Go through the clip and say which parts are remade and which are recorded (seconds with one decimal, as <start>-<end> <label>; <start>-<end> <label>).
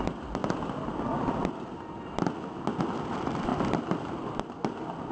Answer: 0.0-0.4 remade; 0.4-2.8 recorded; 2.8-5.1 remade